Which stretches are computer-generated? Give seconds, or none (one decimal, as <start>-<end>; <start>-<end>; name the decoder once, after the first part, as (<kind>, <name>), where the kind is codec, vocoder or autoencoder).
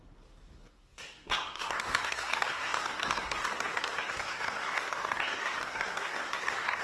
0.0-6.8 (codec, SNAC)